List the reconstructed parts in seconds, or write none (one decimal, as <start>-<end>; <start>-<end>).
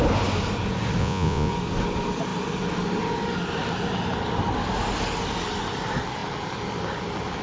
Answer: 1.0-1.5